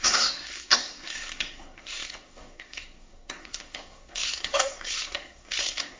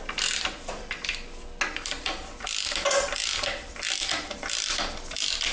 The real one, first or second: second